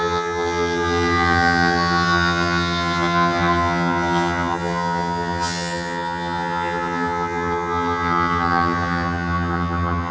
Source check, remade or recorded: remade